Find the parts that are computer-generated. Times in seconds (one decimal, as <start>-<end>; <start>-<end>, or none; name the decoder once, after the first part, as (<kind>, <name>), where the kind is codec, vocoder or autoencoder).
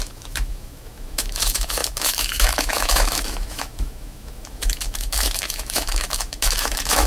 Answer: 0.0-7.1 (autoencoder, DAC-VAE)